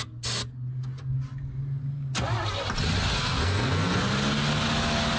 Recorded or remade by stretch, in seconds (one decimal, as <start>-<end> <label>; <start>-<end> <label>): 0.0-3.1 recorded; 3.1-4.0 remade; 4.0-5.2 recorded